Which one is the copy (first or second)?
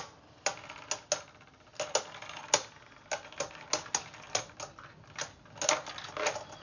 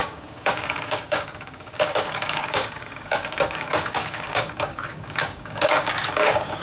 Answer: second